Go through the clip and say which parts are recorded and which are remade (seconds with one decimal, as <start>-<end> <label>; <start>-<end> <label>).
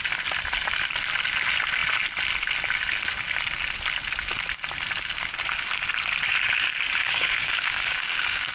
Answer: 0.0-7.0 recorded; 7.0-8.5 remade